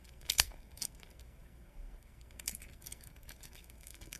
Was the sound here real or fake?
fake